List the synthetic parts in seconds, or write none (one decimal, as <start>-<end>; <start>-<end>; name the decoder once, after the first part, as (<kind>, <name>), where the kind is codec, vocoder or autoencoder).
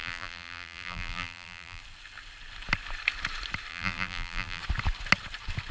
0.0-1.8 (vocoder, BigVGAN v2); 3.7-4.6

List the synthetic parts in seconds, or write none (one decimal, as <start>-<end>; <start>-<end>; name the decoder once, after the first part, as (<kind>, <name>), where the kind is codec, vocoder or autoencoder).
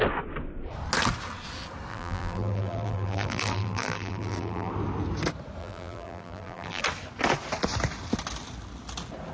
1.9-4.7 (vocoder, BigVGAN v2); 5.6-6.8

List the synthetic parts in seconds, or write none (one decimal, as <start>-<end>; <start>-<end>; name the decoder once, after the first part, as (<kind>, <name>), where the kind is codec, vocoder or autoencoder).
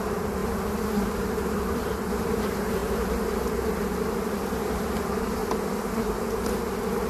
0.0-0.4 (vocoder, BigVGAN v2); 2.3-2.8; 4.5-5.4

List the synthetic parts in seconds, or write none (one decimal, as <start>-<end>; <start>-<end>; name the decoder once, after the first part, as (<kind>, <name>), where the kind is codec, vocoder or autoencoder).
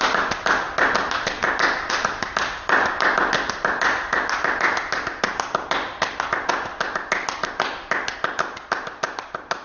none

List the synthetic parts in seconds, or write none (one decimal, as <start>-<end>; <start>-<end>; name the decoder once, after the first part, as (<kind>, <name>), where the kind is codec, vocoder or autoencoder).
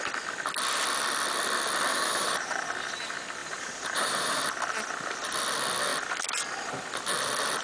1.9-2.7 (vocoder, BigVGAN v2); 3.4-4.4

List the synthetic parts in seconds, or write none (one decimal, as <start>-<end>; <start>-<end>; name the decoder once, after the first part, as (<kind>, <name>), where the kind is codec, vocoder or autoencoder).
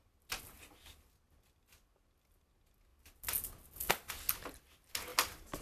5.1-5.6 (vocoder, BigVGAN v2)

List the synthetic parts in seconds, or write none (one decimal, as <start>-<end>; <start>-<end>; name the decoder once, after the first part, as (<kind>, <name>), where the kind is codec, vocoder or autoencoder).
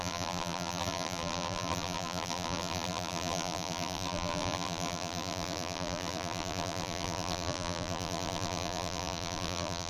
0.0-9.9 (vocoder, BigVGAN v2)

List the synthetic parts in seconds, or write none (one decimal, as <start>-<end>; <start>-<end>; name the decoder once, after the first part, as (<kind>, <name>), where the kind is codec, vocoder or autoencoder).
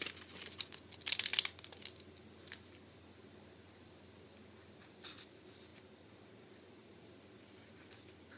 none